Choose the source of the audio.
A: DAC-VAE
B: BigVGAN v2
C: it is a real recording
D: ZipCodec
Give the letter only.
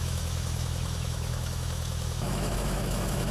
A